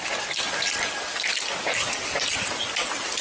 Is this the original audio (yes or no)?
yes